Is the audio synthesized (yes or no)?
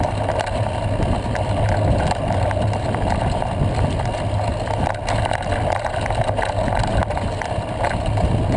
no